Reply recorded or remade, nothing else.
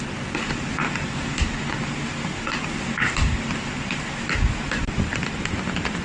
recorded